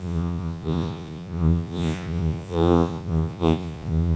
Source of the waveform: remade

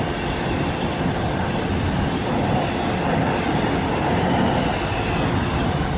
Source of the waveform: recorded